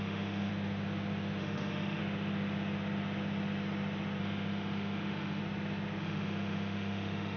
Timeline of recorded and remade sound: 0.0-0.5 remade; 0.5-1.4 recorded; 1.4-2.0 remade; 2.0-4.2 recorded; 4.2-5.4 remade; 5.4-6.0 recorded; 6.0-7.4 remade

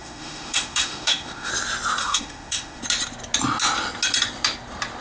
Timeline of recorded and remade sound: 0.0-1.5 remade; 1.5-2.0 recorded; 2.0-2.8 remade; 2.8-5.0 recorded

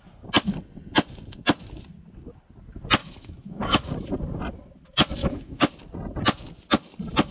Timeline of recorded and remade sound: 0.0-3.0 recorded; 3.0-3.9 remade; 3.9-5.2 recorded; 5.2-5.7 remade; 5.7-7.3 recorded

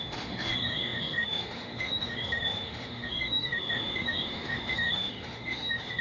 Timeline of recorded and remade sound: 0.0-6.0 remade

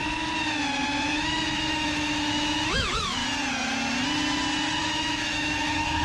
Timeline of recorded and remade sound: 0.0-1.1 recorded; 1.1-3.2 remade; 3.2-4.8 recorded; 4.8-6.0 remade

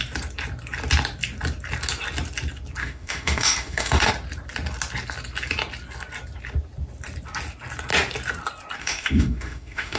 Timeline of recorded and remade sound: 0.0-2.8 recorded; 2.8-4.1 remade; 4.1-8.8 recorded; 8.8-10.0 remade